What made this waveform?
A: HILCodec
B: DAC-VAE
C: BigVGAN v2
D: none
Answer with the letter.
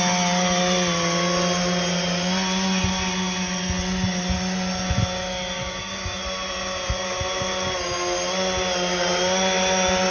D